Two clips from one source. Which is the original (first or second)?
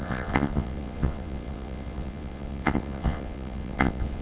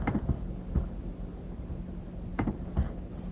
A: second